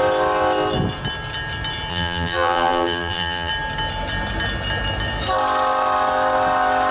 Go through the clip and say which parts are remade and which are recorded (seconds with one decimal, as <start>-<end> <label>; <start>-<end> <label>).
0.0-1.9 recorded; 1.9-3.5 remade; 3.5-6.9 recorded